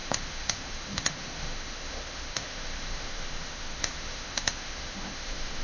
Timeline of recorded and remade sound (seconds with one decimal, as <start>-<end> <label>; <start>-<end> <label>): 0.0-5.6 remade